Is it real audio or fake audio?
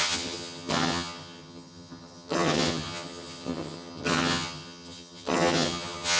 fake